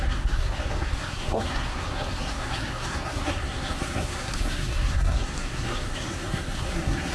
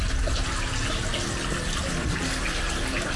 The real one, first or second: second